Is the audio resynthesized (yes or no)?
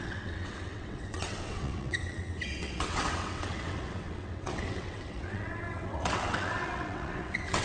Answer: yes